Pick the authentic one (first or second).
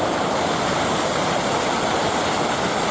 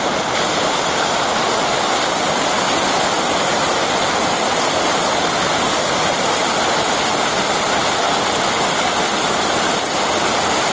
second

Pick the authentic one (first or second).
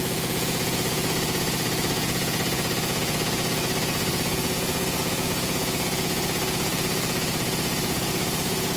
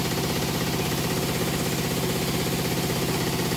second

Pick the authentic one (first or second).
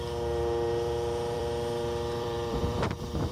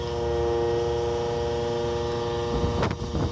second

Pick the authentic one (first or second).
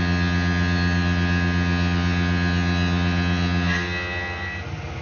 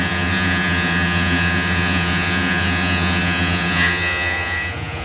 first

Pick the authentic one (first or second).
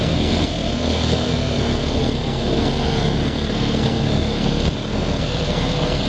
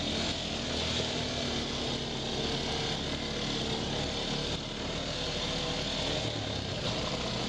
second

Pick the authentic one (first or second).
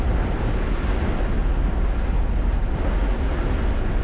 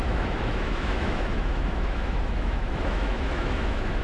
first